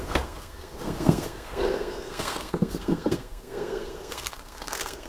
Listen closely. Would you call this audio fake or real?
fake